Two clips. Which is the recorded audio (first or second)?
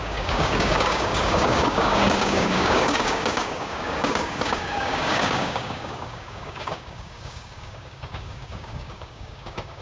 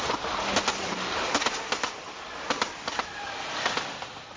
second